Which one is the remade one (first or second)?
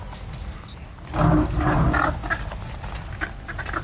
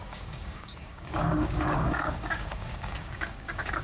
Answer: second